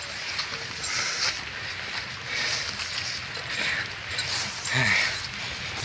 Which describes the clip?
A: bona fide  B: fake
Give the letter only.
A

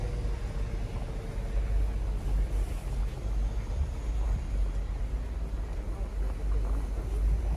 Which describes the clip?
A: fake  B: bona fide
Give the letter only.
B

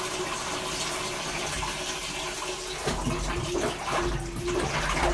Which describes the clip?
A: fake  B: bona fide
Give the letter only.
B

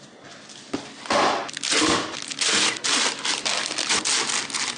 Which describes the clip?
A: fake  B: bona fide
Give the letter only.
B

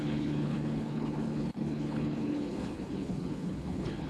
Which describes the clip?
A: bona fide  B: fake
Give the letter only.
B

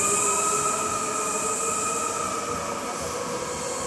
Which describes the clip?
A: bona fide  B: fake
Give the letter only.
A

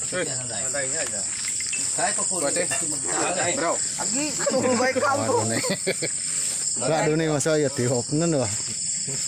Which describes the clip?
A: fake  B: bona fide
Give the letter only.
B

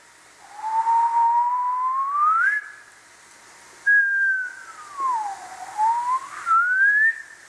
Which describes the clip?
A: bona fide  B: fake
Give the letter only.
A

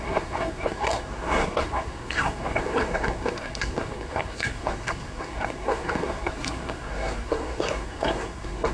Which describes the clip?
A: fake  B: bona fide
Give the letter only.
A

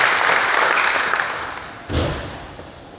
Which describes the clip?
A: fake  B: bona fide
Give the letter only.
B